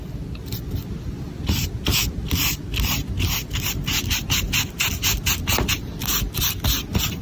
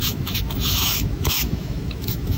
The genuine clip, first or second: first